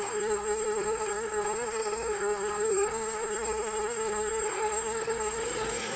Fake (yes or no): yes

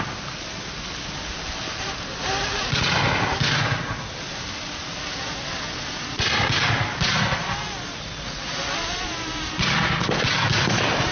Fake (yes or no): no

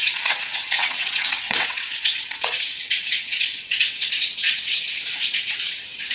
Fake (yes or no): yes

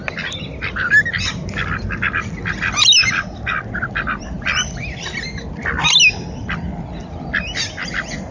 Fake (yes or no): no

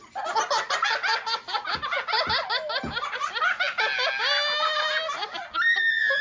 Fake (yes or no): no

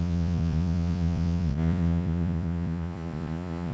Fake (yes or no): yes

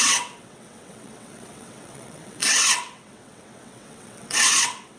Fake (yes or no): yes